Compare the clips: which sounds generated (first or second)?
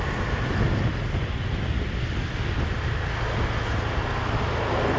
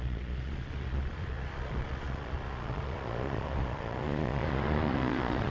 second